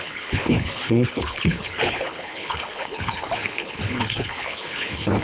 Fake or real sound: fake